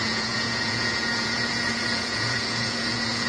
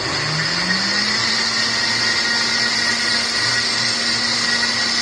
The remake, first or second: first